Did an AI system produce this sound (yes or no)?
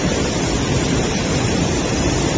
yes